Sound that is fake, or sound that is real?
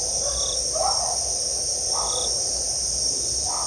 real